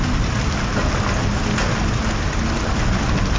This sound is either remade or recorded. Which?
recorded